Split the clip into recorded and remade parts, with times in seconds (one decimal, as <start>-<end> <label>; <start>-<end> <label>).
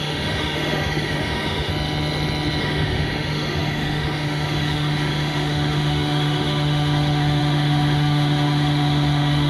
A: 0.0-1.7 remade; 1.7-2.6 recorded; 2.6-9.5 remade